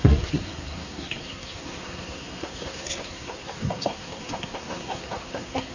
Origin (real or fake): fake